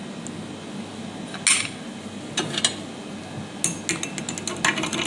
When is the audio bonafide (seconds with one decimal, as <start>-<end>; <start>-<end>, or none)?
0.0-5.1

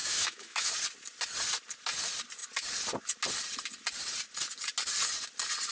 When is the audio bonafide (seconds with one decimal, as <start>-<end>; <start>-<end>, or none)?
0.7-5.7

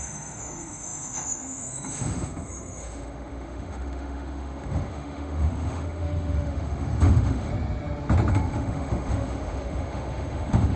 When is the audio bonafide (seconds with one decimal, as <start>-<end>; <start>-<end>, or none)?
7.5-8.3

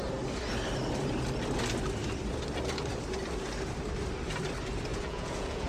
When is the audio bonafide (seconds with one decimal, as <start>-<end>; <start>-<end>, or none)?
0.0-4.9

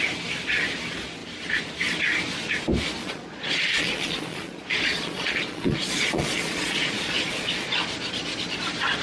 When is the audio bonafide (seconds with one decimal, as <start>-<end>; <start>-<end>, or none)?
0.0-3.0; 7.8-9.0

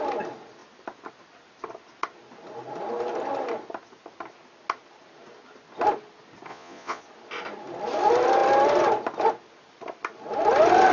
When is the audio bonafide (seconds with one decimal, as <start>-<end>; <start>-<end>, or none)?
0.0-6.5; 7.0-10.9

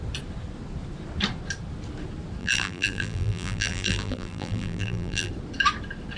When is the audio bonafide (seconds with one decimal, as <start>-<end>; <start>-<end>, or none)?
0.0-2.4; 5.3-6.2

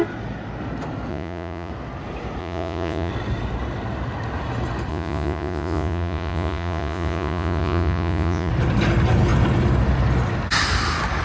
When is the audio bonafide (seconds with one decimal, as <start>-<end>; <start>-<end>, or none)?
0.0-1.1; 1.7-2.4; 3.1-4.9; 8.5-11.2